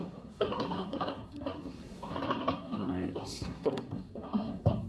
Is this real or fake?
fake